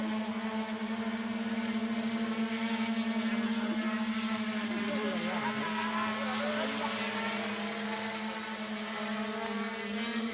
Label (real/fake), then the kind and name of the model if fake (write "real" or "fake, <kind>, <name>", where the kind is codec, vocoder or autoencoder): real